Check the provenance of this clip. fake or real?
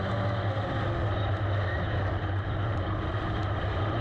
real